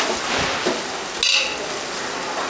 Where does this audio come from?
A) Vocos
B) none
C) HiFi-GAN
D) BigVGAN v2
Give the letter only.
B